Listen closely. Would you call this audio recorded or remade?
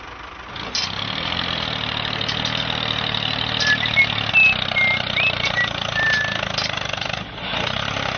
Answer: recorded